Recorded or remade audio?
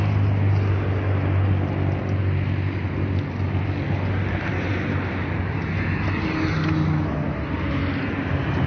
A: recorded